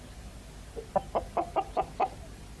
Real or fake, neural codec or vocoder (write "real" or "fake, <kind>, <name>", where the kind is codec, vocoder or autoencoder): real